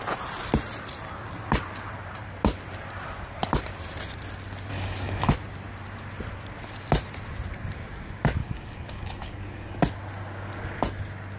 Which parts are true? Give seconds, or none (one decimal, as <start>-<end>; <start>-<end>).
0.0-4.7; 5.3-8.4; 9.8-11.4